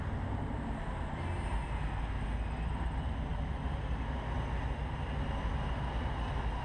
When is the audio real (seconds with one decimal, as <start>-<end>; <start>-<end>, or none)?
0.0-6.6